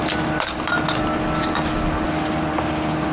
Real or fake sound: real